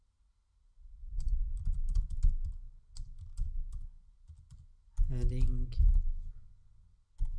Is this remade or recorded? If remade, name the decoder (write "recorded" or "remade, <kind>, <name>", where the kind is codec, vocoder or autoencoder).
recorded